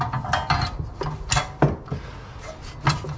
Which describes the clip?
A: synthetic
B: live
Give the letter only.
B